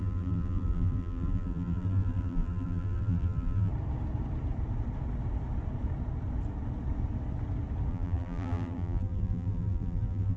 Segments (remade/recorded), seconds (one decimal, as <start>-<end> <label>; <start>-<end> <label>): 0.0-3.7 remade; 3.7-7.9 recorded; 7.9-10.4 remade